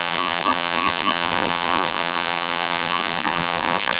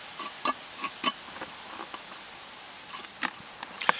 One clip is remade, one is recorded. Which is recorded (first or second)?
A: second